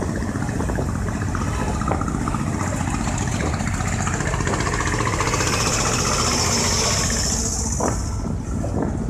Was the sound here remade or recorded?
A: recorded